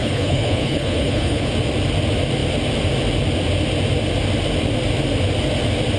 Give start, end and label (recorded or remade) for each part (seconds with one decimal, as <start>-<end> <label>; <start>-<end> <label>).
0.0-1.5 remade; 1.5-6.0 recorded